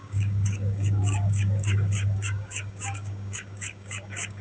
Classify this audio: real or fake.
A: fake